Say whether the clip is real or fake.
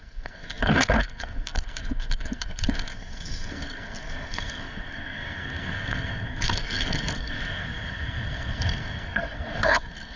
fake